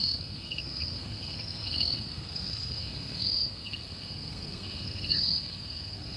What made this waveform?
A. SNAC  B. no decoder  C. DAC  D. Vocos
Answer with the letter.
A